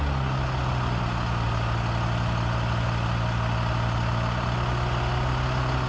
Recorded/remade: recorded